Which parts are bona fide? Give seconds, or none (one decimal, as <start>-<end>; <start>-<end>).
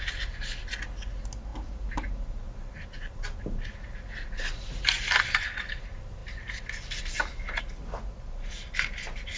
0.0-1.5; 2.4-6.2; 7.6-9.4